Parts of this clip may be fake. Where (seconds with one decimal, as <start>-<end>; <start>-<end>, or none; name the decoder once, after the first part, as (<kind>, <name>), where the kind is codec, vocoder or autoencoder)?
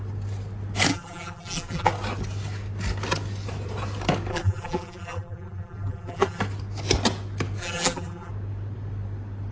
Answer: 0.9-1.9 (vocoder, BigVGAN v2); 4.3-6.4; 7.6-8.3